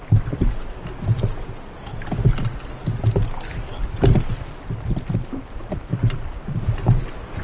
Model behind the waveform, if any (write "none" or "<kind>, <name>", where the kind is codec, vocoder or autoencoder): none